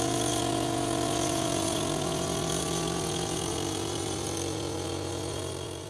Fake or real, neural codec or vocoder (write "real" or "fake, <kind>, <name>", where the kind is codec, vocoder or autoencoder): real